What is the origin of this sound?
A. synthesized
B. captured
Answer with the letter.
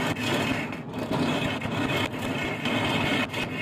B